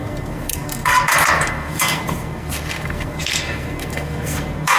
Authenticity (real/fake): fake